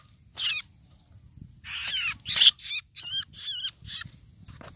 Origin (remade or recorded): recorded